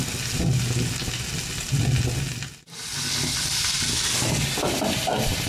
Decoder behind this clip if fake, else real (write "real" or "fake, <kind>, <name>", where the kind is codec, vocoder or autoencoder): real